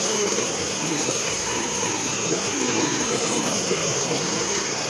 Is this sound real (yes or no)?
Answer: no